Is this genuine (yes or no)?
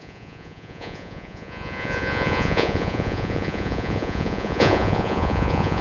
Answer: no